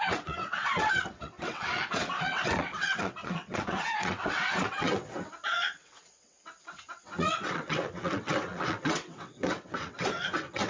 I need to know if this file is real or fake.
fake